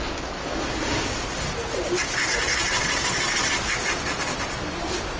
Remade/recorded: recorded